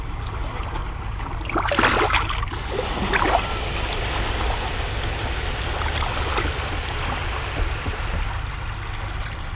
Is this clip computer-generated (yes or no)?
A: no